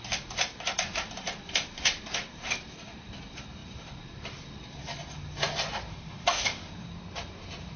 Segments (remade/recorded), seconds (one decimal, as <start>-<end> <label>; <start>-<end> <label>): 0.0-5.9 recorded; 5.9-6.6 remade; 6.6-7.8 recorded